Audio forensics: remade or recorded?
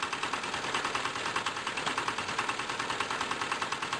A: recorded